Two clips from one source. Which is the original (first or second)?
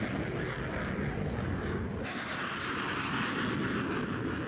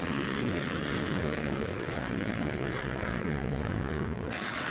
first